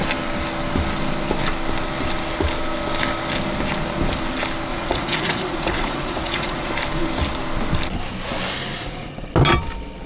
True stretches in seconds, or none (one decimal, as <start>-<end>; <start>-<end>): 0.0-4.7; 6.7-8.6; 9.3-10.1